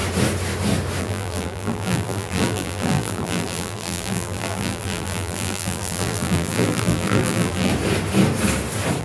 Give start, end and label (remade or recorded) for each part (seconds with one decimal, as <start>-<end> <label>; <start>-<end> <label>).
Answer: 0.0-1.0 recorded; 1.0-7.7 remade; 7.7-9.0 recorded